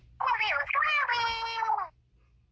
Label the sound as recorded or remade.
recorded